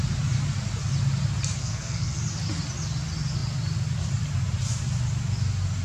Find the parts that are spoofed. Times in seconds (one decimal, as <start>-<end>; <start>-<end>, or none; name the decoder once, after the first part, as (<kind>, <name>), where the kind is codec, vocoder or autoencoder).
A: 1.6-2.2 (codec, SNAC)